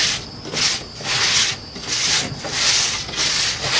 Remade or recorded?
recorded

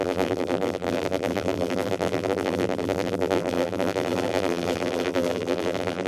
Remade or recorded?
remade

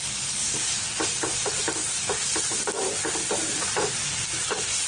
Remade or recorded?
recorded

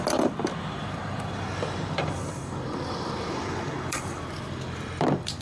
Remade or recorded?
remade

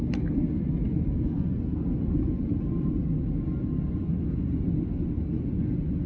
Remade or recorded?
recorded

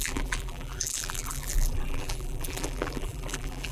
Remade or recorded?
remade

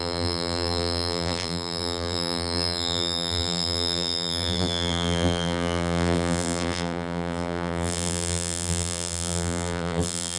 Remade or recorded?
remade